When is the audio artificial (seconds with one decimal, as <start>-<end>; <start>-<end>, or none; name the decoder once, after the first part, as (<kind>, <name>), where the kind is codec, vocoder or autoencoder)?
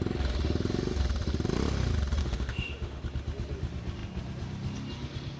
2.2-3.0 (autoencoder, DAC-VAE)